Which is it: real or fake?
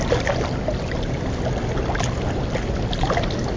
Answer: real